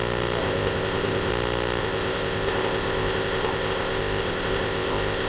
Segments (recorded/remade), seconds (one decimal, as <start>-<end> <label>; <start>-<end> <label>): 0.0-0.4 recorded; 0.4-1.3 remade; 1.3-1.8 recorded; 1.8-5.3 remade